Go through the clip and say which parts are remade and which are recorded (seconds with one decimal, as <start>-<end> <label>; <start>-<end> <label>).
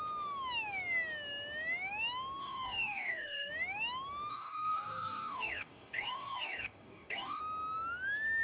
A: 0.0-2.4 recorded; 2.4-3.5 remade; 3.5-4.3 recorded; 4.3-7.4 remade; 7.4-8.4 recorded